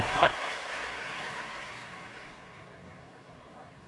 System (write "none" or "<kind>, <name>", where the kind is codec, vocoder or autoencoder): codec, SNAC